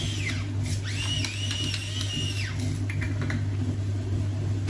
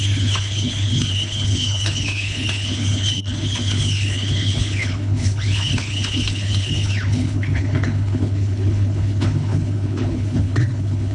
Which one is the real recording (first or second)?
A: first